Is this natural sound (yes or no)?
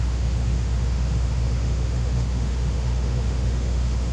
no